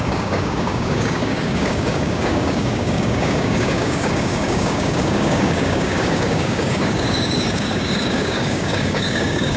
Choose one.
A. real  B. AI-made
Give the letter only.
B